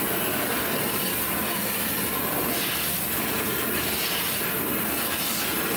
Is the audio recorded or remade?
recorded